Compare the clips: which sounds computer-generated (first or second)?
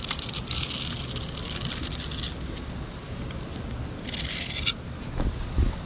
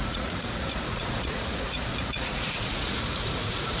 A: second